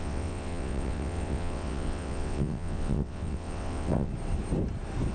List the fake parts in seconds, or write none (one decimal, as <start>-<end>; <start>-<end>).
0.0-4.1